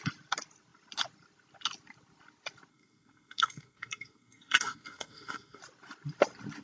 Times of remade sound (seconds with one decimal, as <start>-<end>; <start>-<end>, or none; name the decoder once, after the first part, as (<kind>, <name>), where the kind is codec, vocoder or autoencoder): 2.7-5.6 (codec, SNAC)